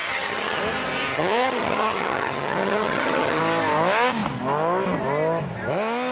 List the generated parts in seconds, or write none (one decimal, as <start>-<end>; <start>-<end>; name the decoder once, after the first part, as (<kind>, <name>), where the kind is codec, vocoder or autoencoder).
0.0-0.6 (vocoder, HiFi-GAN); 1.1-3.4